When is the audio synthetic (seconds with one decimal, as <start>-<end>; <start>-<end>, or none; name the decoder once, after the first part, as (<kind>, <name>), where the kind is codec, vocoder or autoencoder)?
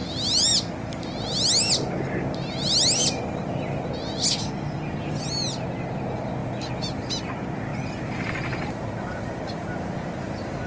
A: 0.0-0.5 (vocoder, BigVGAN v2); 6.4-7.3; 7.7-8.8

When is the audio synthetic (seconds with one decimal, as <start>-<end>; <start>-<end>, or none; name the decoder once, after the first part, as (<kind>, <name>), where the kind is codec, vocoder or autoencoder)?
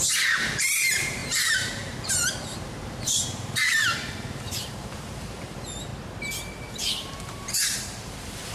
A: 0.0-5.9 (vocoder, BigVGAN v2); 6.7-8.5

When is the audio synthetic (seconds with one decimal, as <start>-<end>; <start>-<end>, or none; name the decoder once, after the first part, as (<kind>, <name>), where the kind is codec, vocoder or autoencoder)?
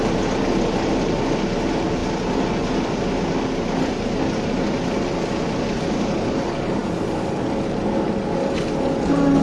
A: none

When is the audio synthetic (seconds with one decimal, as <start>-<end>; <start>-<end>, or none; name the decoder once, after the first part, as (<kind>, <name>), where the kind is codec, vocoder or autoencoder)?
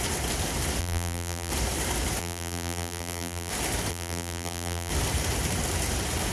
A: 0.8-1.5 (vocoder, BigVGAN v2); 2.2-3.5; 3.9-4.9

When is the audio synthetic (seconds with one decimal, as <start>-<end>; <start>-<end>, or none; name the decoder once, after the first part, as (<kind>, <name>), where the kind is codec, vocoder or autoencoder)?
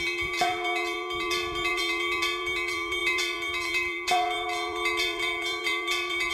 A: 0.0-6.3 (vocoder, BigVGAN v2)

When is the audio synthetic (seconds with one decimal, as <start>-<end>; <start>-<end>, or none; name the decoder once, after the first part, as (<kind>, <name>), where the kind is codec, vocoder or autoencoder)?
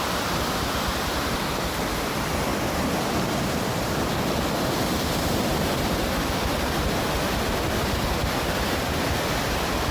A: 0.0-9.9 (vocoder, BigVGAN v2)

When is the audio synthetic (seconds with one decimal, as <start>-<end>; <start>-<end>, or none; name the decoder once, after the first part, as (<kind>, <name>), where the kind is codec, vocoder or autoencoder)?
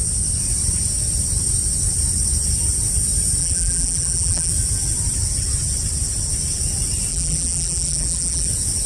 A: 3.4-4.5 (vocoder, BigVGAN v2); 7.1-8.5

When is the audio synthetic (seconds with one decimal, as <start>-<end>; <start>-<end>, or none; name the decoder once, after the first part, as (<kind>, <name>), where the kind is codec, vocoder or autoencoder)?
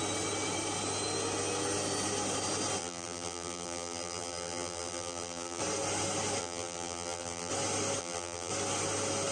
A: 2.8-5.6 (vocoder, BigVGAN v2); 6.4-7.5; 8.0-8.5